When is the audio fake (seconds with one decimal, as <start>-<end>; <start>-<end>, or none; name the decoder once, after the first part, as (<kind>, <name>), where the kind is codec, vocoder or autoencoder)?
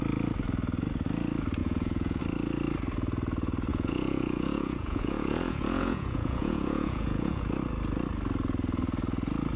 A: 1.6-2.2 (vocoder, Vocos); 3.7-7.4